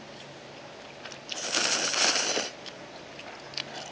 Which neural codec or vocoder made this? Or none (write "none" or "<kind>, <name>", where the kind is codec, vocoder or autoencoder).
none